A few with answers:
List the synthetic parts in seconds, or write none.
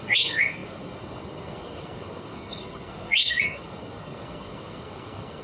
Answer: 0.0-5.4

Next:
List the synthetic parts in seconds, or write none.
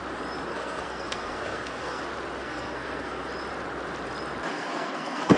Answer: 0.5-2.0; 2.4-3.3; 4.5-5.4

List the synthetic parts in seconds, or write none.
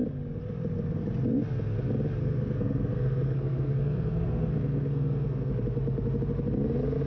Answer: 2.2-5.5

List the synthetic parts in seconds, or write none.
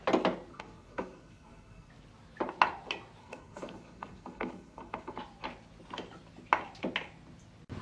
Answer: 0.5-1.9; 3.2-5.2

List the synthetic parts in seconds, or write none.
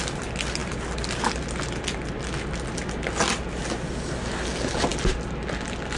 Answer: none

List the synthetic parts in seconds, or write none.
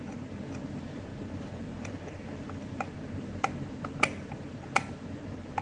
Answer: none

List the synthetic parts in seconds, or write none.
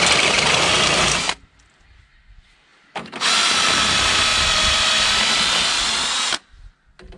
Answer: none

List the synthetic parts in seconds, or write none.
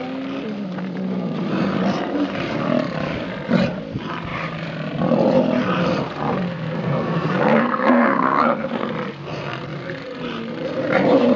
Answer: 6.5-8.9